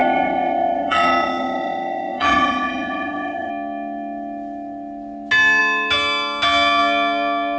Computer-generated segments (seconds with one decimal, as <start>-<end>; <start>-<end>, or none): 0.0-3.5